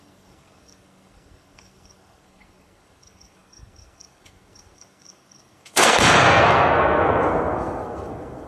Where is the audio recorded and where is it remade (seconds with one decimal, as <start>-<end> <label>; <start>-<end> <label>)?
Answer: 0.0-8.5 remade